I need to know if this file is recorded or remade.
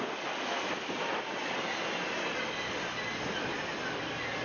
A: recorded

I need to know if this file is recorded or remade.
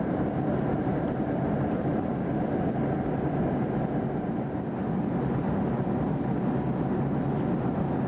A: recorded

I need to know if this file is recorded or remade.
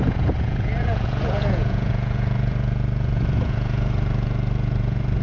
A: remade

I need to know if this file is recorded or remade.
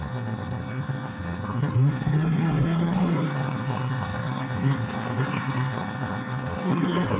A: remade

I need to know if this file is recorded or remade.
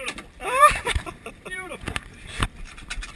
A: remade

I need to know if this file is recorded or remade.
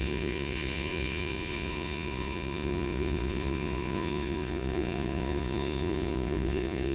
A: remade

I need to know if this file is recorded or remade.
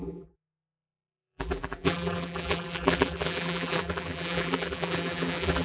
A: remade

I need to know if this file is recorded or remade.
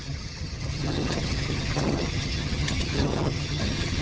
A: remade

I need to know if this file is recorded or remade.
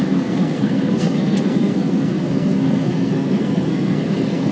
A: remade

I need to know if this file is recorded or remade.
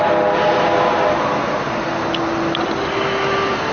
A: recorded